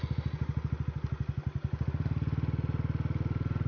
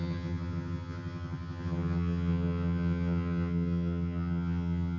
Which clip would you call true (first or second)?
first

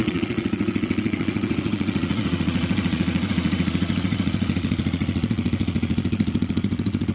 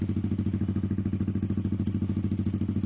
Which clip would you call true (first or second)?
second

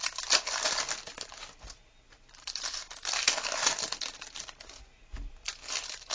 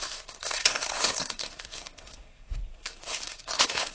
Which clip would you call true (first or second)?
first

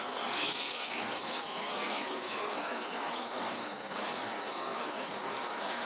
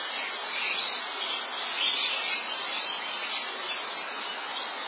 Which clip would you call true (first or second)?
second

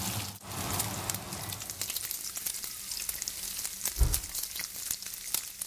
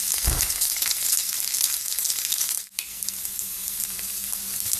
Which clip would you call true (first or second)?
first